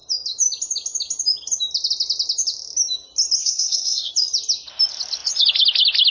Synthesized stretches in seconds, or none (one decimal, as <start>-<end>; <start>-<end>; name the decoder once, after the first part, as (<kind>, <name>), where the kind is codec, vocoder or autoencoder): 3.4-4.1 (codec, SNAC)